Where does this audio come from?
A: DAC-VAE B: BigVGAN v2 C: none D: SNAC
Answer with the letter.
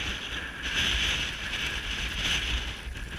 C